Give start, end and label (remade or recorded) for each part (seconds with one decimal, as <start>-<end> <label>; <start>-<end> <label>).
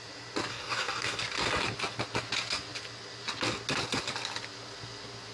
0.0-0.5 recorded; 0.5-1.2 remade; 1.2-5.3 recorded